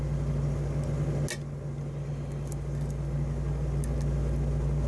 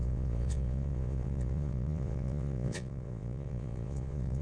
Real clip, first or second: first